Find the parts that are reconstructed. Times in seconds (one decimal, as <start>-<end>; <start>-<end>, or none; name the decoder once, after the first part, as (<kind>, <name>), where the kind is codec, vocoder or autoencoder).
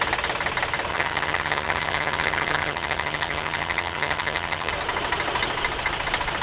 0.9-4.7 (vocoder, HiFi-GAN)